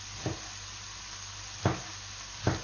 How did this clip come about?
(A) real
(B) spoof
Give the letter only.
A